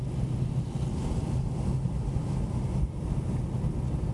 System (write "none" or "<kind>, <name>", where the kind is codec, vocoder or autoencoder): none